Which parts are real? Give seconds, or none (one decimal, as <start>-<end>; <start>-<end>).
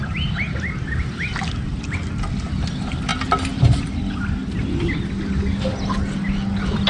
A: 0.0-4.4; 5.1-6.9